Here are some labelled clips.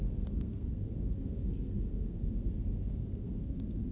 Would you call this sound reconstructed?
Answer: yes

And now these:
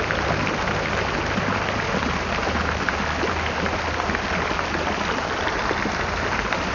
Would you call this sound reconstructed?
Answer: no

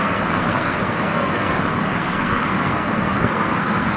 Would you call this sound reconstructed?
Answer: yes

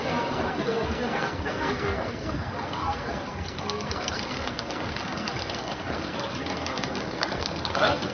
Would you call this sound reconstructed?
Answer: yes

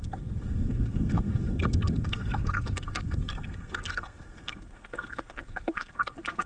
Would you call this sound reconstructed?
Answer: yes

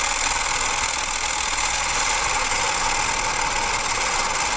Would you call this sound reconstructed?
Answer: no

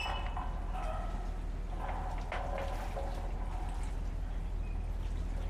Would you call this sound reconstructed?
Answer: no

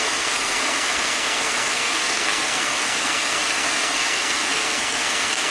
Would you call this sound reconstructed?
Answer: yes